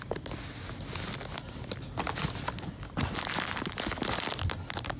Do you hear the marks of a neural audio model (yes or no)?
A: no